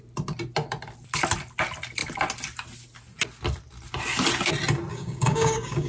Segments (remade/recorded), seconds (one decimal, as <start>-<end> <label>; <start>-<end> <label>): 0.0-4.9 recorded; 4.9-5.9 remade